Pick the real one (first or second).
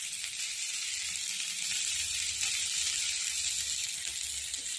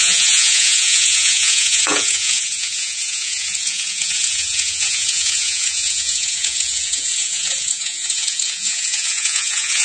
first